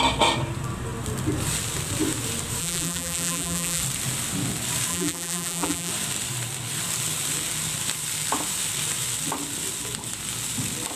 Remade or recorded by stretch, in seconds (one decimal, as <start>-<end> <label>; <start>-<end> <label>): 0.0-2.6 recorded; 2.6-3.8 remade; 3.8-4.9 recorded; 4.9-5.9 remade; 5.9-11.0 recorded